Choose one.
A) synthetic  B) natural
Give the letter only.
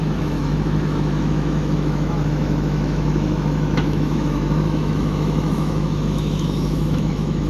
A